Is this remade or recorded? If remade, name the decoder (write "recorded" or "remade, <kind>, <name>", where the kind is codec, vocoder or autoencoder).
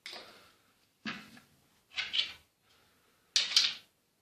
recorded